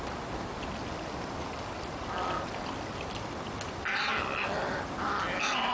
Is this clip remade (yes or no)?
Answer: no